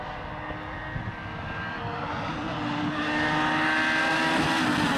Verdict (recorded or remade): recorded